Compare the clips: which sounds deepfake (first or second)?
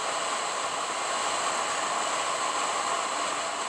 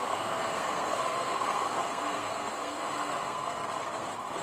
second